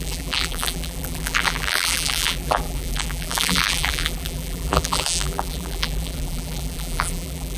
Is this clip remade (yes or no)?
yes